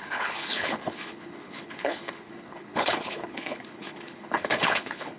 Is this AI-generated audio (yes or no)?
yes